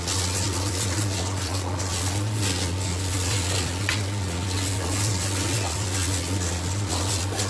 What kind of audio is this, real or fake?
fake